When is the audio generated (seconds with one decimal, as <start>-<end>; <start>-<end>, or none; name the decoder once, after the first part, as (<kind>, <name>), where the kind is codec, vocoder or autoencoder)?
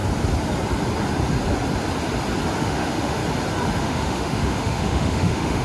2.6-3.2 (autoencoder, DAC-VAE); 3.8-5.6